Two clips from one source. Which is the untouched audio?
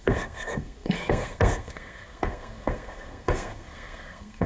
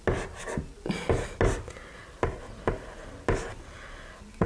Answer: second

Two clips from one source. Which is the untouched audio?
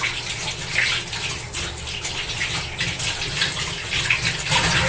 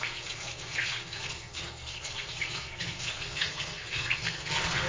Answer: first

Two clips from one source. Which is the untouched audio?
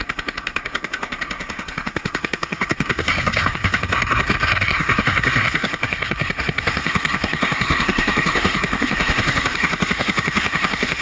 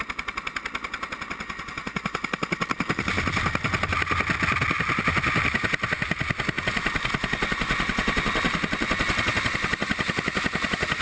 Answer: second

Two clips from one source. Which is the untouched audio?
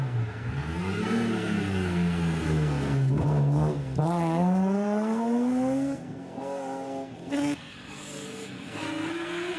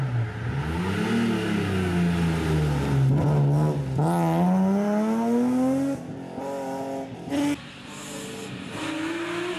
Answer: second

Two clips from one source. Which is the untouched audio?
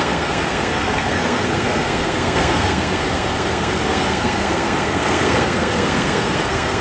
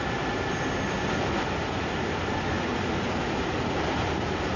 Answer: second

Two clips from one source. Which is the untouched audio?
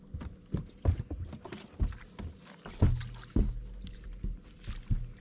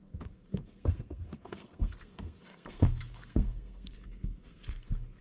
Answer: first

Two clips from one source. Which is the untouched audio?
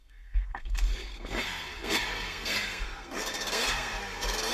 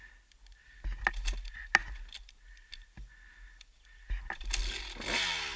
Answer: second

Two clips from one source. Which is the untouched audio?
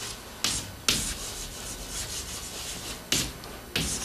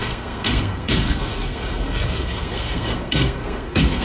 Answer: first